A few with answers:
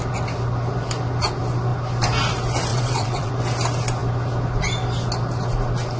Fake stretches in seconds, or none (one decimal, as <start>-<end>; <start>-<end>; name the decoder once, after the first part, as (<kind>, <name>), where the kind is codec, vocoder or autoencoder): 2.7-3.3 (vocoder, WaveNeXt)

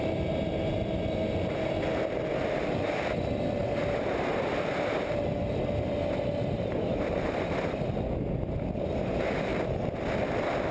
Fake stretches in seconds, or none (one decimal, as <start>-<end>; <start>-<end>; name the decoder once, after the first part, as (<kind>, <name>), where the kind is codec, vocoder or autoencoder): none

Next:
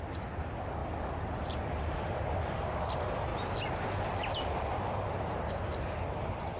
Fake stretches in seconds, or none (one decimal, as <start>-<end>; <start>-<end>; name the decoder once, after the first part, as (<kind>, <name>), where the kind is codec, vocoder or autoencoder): none

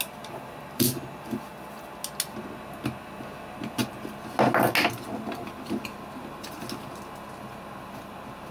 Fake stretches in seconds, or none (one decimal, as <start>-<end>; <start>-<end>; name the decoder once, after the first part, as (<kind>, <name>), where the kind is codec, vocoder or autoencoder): none

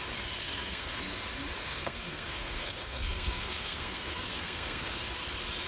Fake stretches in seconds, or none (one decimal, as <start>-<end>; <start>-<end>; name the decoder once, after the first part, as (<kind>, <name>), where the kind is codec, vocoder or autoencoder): 0.4-1.0 (codec, SNAC); 1.6-5.0

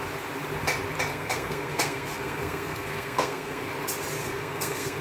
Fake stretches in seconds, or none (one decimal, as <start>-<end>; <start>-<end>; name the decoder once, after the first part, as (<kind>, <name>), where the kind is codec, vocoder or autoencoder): 1.1-3.7 (codec, SNAC); 4.2-5.0